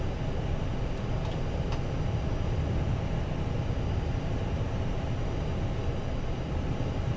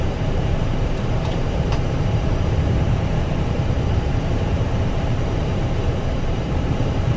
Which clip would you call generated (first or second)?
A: second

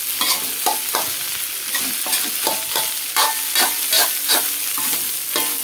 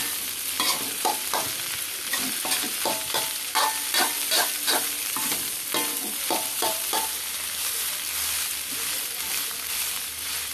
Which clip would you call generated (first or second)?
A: second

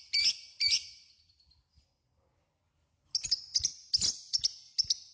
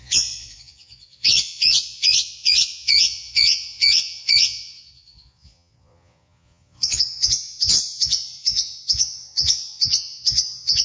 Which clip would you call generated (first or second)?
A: second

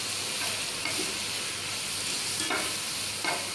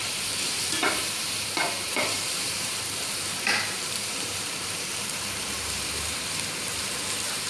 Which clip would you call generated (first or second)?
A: second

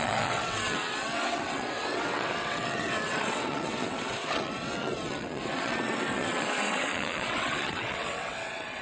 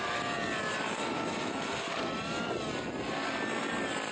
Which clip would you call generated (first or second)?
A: first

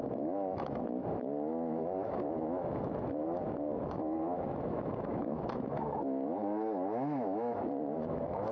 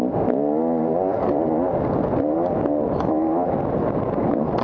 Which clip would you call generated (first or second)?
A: first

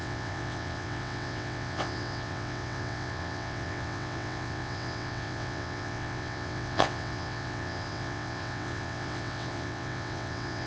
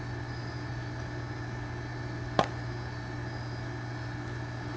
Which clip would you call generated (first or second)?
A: first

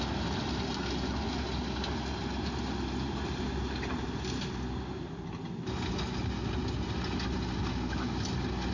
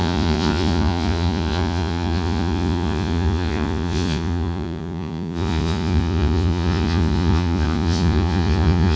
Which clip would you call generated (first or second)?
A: second